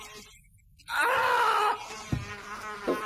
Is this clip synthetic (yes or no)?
no